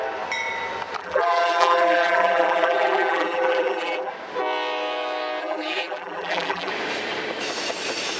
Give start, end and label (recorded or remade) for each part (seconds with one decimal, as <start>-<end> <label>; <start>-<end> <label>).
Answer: 0.0-1.0 recorded; 1.0-4.1 remade; 4.1-5.4 recorded; 5.4-6.7 remade; 6.7-8.2 recorded